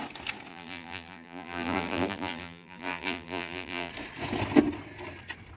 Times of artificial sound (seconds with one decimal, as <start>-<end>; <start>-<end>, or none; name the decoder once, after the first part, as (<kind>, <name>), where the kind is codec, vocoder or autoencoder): 0.5-3.9 (vocoder, BigVGAN v2)